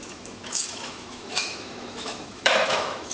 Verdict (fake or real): fake